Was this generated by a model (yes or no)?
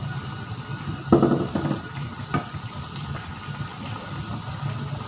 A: no